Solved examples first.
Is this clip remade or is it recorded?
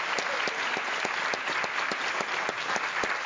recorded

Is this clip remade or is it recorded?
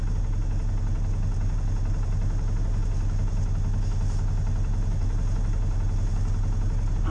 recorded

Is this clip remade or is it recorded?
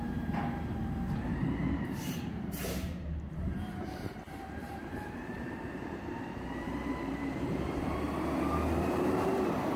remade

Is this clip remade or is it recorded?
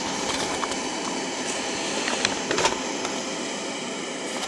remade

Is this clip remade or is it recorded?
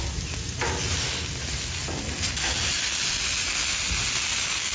recorded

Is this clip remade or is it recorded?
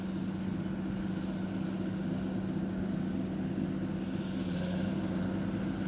recorded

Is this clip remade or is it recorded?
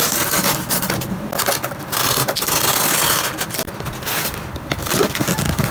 recorded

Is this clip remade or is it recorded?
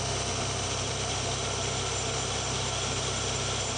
remade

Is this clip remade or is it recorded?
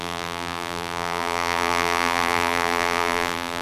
remade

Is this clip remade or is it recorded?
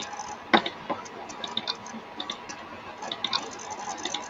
recorded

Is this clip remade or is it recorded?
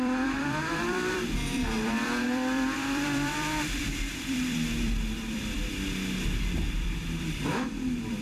remade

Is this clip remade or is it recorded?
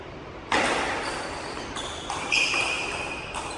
recorded